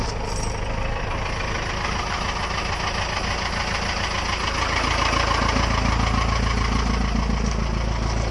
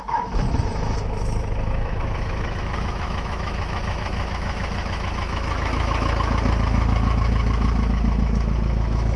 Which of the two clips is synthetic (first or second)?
second